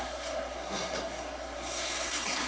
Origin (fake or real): fake